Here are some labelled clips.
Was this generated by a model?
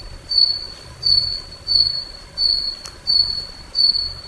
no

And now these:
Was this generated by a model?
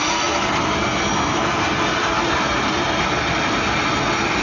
no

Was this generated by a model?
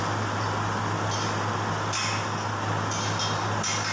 no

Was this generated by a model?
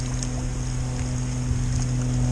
no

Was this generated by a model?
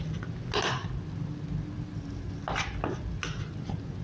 no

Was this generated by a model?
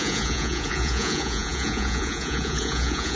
yes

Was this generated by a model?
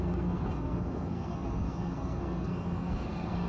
yes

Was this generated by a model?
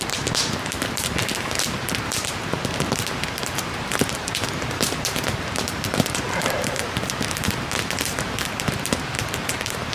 yes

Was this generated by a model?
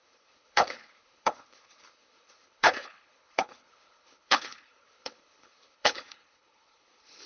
yes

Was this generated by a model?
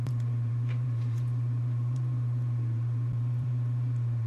yes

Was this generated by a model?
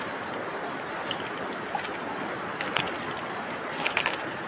no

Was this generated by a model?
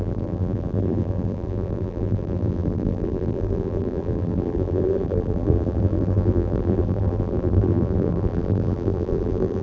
yes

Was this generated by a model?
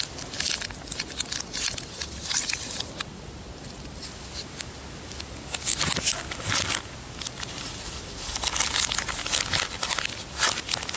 no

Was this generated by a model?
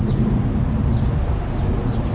no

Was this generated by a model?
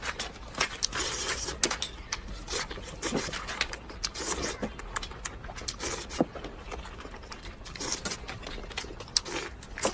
no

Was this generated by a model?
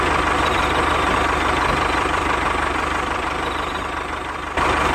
yes